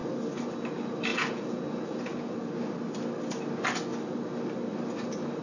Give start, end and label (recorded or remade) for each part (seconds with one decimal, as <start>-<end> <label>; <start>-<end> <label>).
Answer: 0.0-1.1 recorded; 1.1-2.5 remade; 2.5-5.4 recorded